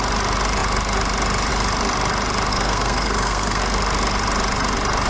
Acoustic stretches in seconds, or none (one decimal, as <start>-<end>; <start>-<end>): 0.0-2.5; 3.6-5.1